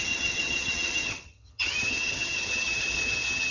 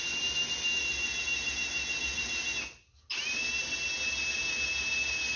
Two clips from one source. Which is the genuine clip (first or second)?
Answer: second